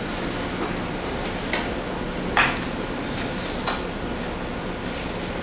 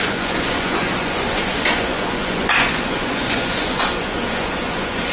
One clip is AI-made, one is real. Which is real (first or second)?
first